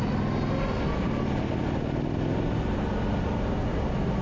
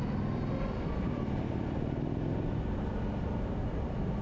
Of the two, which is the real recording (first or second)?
first